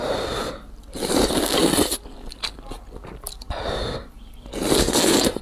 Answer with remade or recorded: recorded